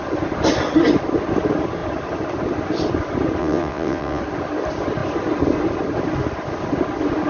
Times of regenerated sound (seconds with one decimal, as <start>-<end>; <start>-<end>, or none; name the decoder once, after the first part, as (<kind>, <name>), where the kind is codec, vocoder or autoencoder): 3.4-4.2 (vocoder, WaveNeXt)